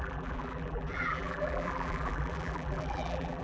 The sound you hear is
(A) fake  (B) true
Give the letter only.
A